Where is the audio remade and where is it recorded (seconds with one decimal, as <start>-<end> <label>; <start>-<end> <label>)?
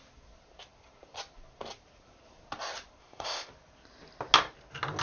0.0-3.0 recorded; 3.0-3.5 remade; 3.5-5.0 recorded